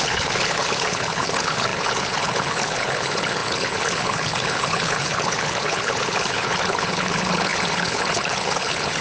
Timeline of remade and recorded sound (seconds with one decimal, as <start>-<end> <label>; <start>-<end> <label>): 0.0-9.0 remade